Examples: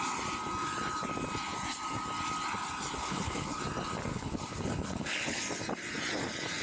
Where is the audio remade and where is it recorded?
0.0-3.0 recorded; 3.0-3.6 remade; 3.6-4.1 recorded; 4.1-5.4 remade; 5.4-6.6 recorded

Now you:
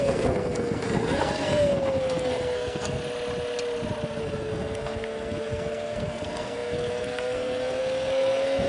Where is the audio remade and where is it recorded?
0.0-3.0 remade; 3.0-4.2 recorded; 4.2-8.7 remade

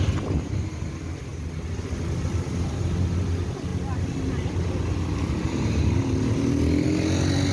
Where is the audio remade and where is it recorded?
0.0-7.5 recorded

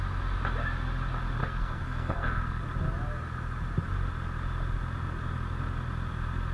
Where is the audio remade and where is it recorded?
0.0-1.4 recorded; 1.4-2.6 remade; 2.6-6.5 recorded

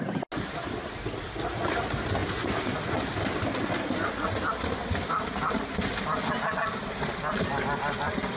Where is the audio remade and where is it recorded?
0.0-8.4 recorded

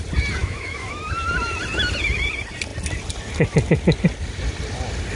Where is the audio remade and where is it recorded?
0.0-0.4 recorded; 0.4-1.0 remade; 1.0-5.2 recorded

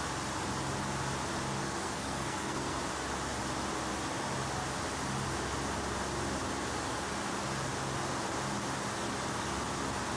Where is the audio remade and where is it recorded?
0.0-1.6 recorded; 1.6-2.8 remade; 2.8-10.2 recorded

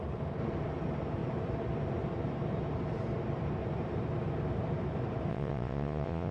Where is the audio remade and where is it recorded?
0.0-5.3 recorded; 5.3-6.3 remade